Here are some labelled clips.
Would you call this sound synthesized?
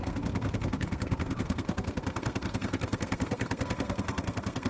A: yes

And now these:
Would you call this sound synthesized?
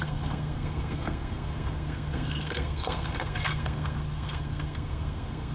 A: yes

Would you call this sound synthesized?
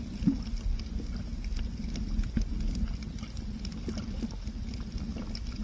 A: no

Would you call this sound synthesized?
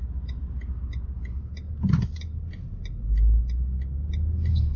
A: no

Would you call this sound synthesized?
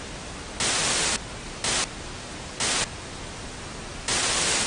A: no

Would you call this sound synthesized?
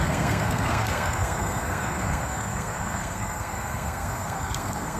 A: yes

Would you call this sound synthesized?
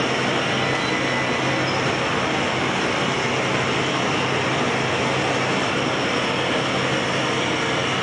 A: no